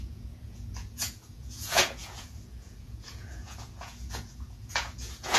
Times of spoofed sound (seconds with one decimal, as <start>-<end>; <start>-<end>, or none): 0.0-5.4